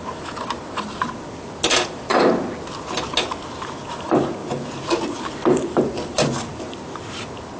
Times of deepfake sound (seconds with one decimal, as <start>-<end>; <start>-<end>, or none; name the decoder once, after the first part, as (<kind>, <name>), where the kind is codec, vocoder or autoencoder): 0.0-2.1 (vocoder, BigVGAN v2); 3.3-7.6